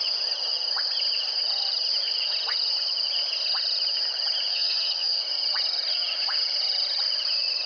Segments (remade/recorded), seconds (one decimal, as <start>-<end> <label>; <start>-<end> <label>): 0.0-4.5 recorded; 4.5-5.2 remade; 5.2-7.7 recorded